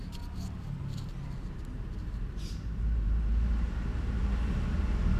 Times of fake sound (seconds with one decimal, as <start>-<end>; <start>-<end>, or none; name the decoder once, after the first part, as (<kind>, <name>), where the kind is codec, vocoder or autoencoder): 1.1-4.2 (vocoder, BigVGAN v2)